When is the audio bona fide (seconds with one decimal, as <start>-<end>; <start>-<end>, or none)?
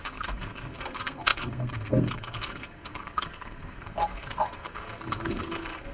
none